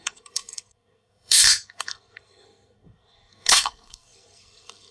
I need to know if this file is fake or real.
fake